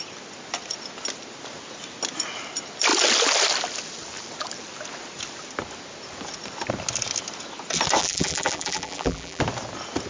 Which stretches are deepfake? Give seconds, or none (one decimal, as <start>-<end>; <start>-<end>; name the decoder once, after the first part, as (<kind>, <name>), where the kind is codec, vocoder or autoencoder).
8.0-9.4 (vocoder, BigVGAN v2)